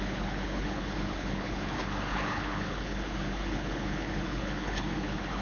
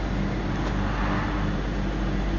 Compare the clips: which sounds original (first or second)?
second